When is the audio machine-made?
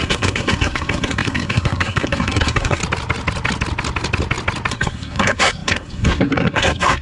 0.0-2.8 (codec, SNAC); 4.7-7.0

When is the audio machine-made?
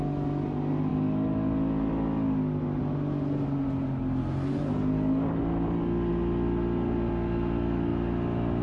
none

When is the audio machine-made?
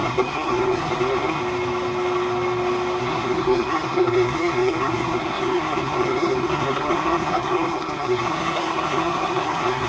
0.0-1.4 (codec, SNAC); 3.0-9.9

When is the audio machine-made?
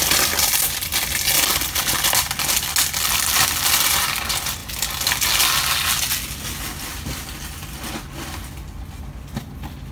none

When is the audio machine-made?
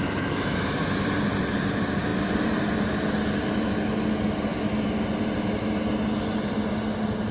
none